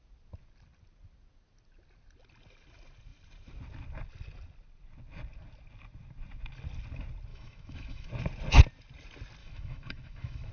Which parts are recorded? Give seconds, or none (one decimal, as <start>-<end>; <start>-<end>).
0.0-7.3; 8.1-9.4